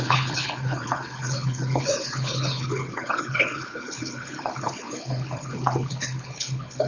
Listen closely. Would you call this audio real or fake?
fake